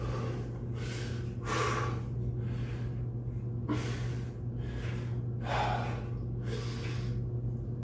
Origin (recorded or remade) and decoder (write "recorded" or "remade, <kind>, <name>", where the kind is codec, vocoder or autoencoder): recorded